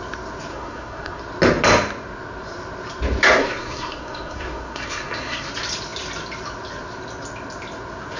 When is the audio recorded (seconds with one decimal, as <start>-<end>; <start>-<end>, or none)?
0.0-0.5; 1.2-3.4; 5.5-8.2